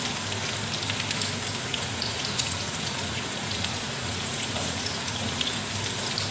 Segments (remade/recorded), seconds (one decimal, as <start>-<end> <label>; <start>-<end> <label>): 0.0-1.7 recorded; 1.7-5.5 remade; 5.5-6.3 recorded